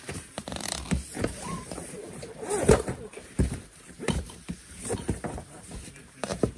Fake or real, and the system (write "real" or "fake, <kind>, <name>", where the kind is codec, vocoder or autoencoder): fake, vocoder, BigVGAN v2